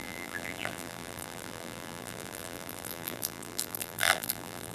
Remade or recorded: remade